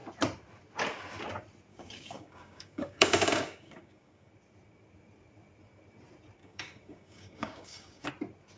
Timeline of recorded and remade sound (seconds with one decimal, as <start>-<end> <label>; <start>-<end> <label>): 0.0-1.7 recorded; 1.7-4.3 remade; 4.3-6.4 recorded; 6.4-8.1 remade; 8.1-8.6 recorded